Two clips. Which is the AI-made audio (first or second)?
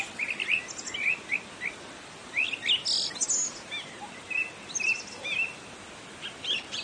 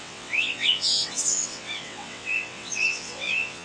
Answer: second